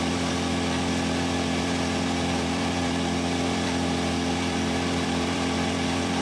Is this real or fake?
fake